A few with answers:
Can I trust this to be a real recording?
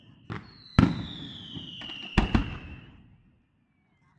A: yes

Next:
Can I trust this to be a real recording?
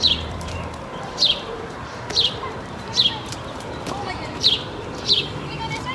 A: no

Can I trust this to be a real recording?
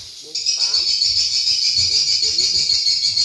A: yes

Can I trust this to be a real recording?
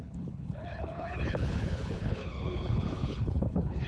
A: no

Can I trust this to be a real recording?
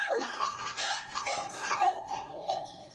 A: no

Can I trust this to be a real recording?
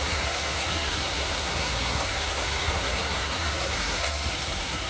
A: no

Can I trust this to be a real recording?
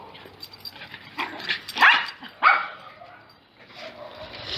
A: no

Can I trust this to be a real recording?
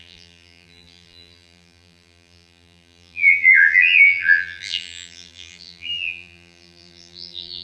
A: no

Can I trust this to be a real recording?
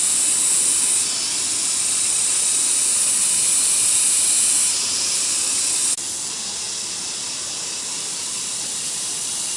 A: yes